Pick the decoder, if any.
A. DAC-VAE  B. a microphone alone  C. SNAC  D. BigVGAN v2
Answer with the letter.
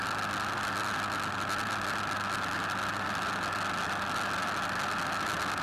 B